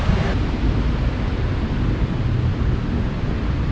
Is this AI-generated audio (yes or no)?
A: no